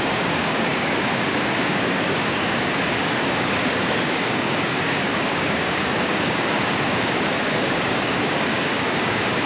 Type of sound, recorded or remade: remade